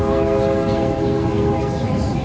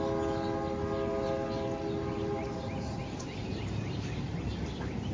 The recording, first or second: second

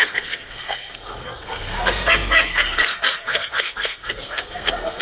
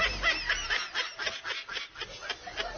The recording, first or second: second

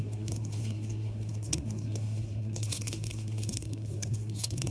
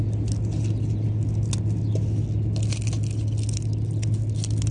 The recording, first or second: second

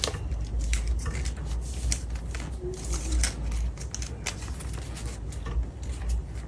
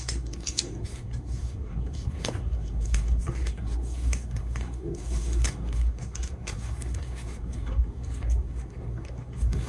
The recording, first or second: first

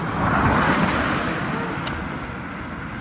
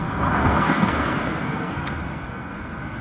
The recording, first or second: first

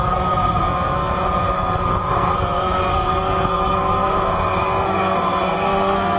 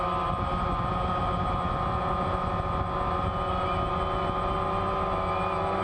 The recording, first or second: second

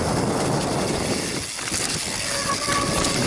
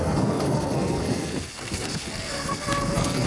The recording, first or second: first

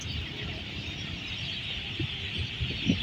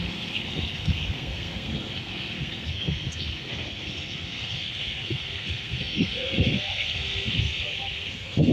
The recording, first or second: first